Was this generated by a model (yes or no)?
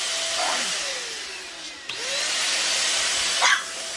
no